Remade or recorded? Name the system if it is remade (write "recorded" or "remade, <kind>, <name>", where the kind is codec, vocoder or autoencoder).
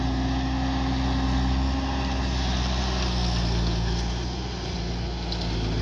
recorded